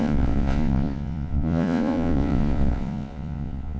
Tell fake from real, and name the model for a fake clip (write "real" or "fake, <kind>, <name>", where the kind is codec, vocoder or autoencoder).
fake, vocoder, Vocos